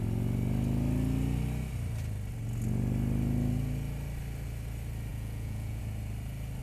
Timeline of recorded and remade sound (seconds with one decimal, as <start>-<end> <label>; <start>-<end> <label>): 0.0-5.1 recorded; 5.1-5.8 remade; 5.8-6.6 recorded